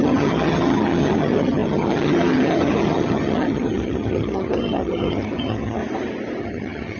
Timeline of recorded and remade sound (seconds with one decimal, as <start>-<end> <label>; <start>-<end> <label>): 0.0-5.8 remade; 5.8-6.4 recorded; 6.4-7.0 remade